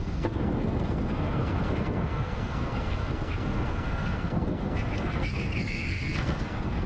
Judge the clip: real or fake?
fake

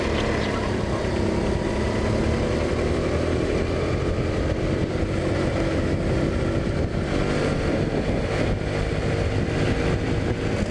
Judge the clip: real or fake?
real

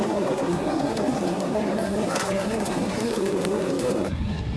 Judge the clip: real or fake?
fake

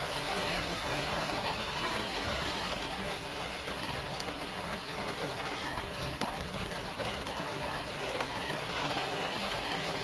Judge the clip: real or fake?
fake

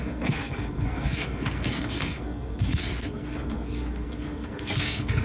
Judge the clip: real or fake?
fake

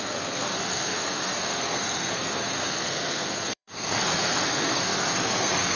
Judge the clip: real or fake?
fake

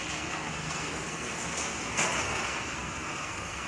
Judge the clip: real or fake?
fake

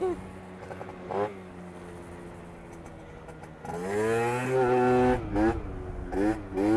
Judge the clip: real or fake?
real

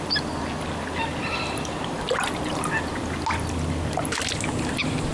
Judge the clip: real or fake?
real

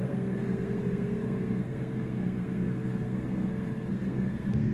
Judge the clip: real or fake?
fake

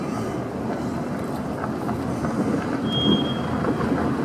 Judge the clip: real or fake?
real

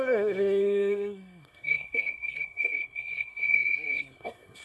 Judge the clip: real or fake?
fake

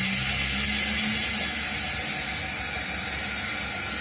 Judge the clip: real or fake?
real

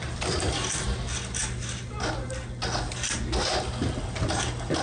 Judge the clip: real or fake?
real